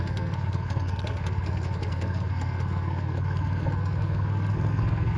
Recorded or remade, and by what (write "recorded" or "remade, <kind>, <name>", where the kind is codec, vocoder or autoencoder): remade, codec, SNAC